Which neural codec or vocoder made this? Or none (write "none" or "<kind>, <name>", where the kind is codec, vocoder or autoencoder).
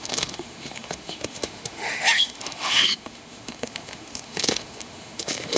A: autoencoder, DAC-VAE